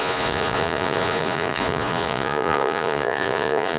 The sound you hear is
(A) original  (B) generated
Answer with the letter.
B